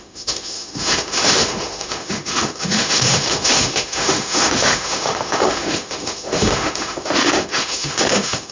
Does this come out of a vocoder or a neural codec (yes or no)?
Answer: yes